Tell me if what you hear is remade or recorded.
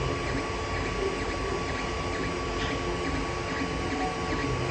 recorded